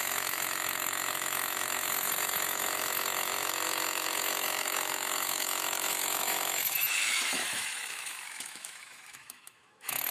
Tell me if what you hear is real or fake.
fake